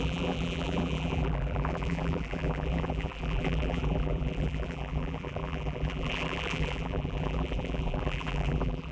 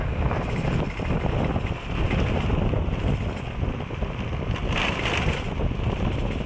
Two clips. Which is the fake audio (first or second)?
first